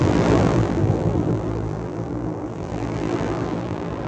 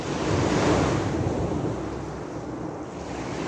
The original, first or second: second